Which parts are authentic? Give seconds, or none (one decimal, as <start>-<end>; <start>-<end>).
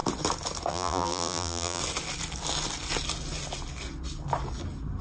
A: 0.0-0.7; 1.8-5.0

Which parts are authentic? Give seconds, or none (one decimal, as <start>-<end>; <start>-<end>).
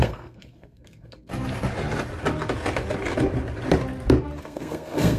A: 1.3-4.4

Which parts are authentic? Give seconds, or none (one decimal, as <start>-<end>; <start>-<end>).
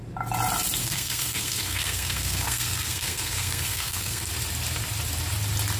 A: 0.0-0.8; 4.3-5.8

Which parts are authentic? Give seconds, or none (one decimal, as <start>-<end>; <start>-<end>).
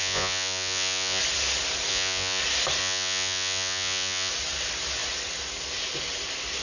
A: 1.2-1.9; 2.4-2.8; 4.3-6.6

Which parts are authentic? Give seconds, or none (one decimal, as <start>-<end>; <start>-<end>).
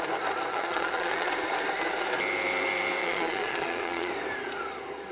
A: 0.0-0.5; 1.3-3.0; 4.1-5.1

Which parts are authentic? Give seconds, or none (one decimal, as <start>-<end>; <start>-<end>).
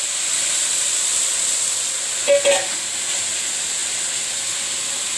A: 0.0-5.2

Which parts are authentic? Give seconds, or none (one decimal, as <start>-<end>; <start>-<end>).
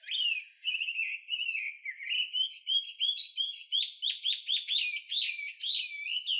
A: 0.0-6.4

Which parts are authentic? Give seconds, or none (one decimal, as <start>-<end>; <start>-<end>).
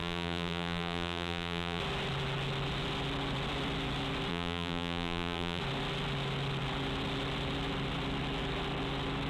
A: 1.8-4.3; 5.6-9.3